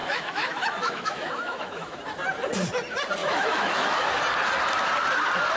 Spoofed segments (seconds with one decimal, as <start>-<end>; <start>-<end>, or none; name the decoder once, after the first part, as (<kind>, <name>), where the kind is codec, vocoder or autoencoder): 0.0-2.0 (autoencoder, DAC-VAE); 3.2-4.2